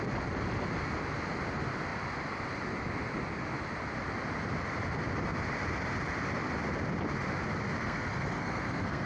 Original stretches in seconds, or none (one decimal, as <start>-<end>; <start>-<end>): 0.0-7.8